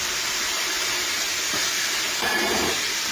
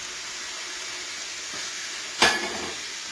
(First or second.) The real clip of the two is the second